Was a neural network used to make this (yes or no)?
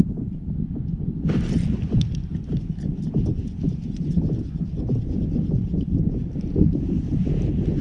no